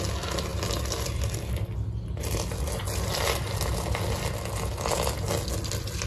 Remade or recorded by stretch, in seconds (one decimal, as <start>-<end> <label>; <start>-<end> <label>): 0.0-6.1 recorded